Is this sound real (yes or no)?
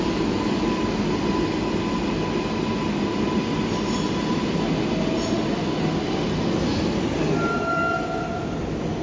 yes